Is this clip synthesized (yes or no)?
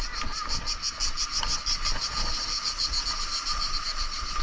no